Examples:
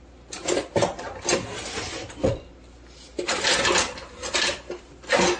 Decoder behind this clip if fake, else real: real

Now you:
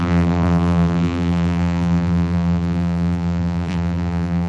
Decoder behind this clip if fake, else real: fake, vocoder, BigVGAN v2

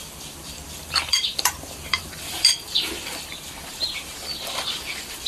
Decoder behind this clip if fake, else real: fake, vocoder, BigVGAN v2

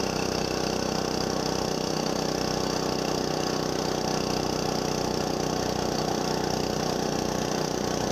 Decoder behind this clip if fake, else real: real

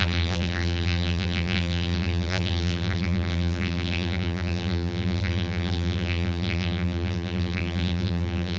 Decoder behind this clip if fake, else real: fake, vocoder, BigVGAN v2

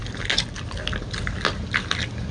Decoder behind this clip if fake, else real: real